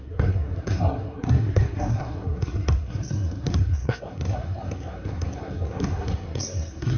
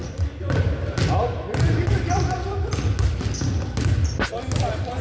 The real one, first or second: second